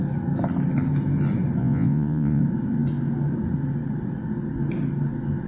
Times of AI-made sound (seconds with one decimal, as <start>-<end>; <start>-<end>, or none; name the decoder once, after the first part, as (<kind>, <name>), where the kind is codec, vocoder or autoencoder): 1.6-2.4 (vocoder, Vocos)